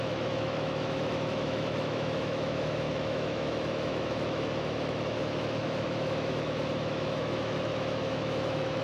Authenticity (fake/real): fake